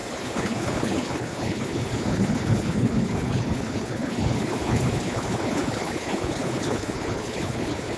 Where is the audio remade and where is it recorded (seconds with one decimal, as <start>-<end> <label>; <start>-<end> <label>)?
0.0-8.0 remade